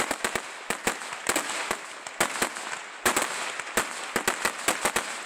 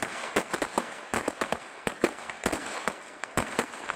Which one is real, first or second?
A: first